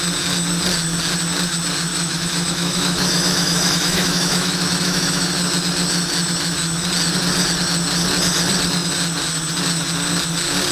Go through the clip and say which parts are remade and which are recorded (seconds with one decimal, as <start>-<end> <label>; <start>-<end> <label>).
0.0-1.9 recorded; 1.9-5.3 remade; 5.3-10.7 recorded